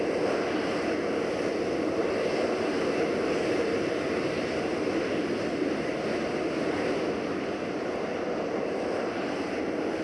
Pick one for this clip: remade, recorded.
recorded